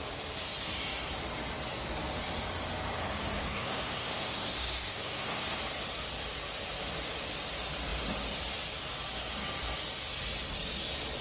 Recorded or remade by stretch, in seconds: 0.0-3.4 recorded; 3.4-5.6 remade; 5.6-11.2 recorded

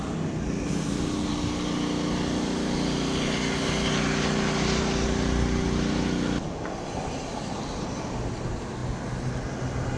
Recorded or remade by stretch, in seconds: 0.0-10.0 recorded

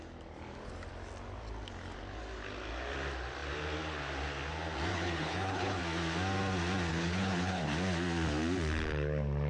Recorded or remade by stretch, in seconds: 0.0-4.9 recorded; 4.9-5.8 remade; 5.8-6.9 recorded; 6.9-7.6 remade; 7.6-9.5 recorded

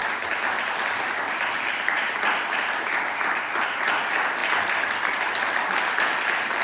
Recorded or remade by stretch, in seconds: 0.0-4.0 remade; 4.0-4.4 recorded; 4.4-6.6 remade

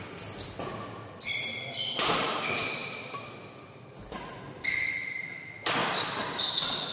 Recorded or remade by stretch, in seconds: 0.0-2.8 recorded; 2.8-3.5 remade; 3.5-5.8 recorded; 5.8-6.9 remade

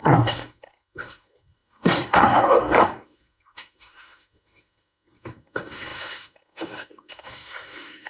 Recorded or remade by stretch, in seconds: 0.0-8.1 remade

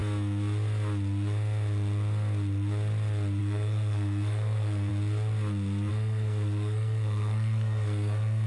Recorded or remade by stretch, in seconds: 0.0-3.4 recorded; 3.4-4.9 remade; 4.9-5.9 recorded; 5.9-8.5 remade